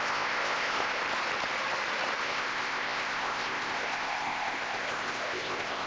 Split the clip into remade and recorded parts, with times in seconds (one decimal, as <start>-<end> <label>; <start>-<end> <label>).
0.0-1.0 remade; 1.0-2.2 recorded; 2.2-5.9 remade